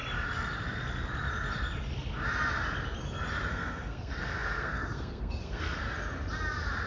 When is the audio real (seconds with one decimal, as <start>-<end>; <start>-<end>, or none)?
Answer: 0.0-3.5; 5.8-6.9